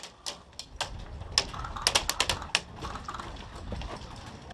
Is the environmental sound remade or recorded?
recorded